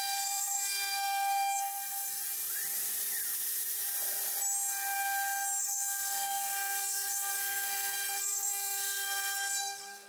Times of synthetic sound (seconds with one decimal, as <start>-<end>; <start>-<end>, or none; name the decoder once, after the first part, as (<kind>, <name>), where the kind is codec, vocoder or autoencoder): 0.0-2.2 (codec, SNAC); 5.6-10.1